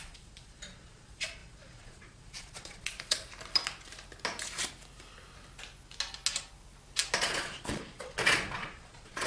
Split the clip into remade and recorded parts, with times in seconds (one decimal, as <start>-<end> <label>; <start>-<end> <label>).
0.0-3.3 remade; 3.3-7.2 recorded; 7.2-9.3 remade